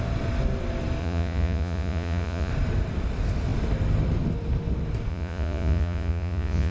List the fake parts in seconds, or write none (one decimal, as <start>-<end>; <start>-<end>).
1.0-2.5; 5.1-6.7